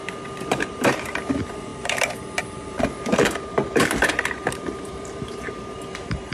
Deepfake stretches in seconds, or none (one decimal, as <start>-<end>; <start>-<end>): 0.5-6.3